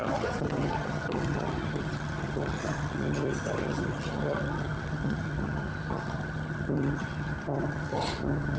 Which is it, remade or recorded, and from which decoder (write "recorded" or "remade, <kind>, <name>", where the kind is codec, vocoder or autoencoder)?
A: remade, vocoder, HiFi-GAN